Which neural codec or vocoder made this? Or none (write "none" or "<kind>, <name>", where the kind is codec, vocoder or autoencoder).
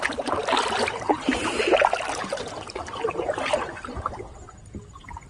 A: none